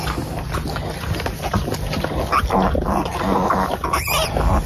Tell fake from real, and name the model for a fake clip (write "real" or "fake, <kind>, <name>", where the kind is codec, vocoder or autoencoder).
real